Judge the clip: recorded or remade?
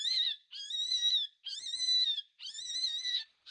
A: recorded